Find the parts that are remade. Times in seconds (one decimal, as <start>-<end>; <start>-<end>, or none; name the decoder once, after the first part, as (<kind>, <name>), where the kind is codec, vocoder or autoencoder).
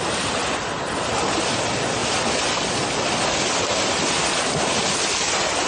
none